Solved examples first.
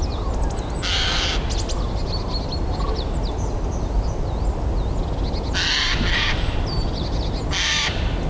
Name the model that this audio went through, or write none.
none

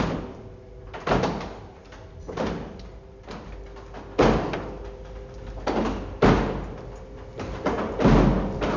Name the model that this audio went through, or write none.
none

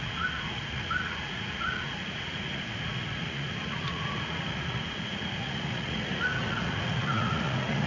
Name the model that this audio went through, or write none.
vocoder, Vocos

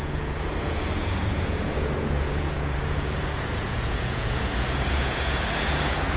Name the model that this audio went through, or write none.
vocoder, Vocos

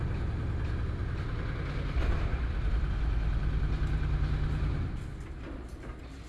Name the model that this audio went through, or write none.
none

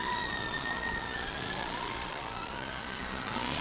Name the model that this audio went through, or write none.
vocoder, Vocos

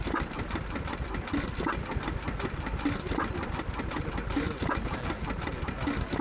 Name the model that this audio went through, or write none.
none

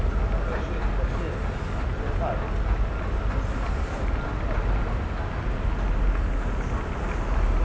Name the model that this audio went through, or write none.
none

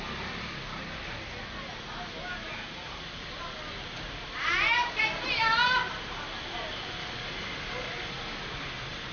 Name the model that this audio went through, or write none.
none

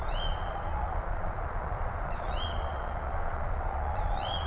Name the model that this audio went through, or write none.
vocoder, Vocos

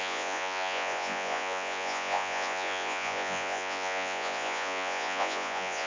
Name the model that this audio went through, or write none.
vocoder, Vocos